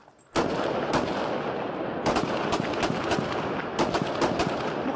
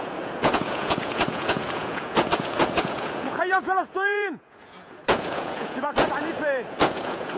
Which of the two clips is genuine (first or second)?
first